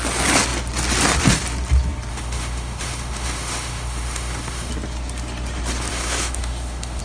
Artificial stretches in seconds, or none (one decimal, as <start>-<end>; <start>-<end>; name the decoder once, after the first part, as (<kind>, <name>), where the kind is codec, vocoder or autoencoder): 2.1-4.7 (autoencoder, DAC-VAE); 5.9-7.0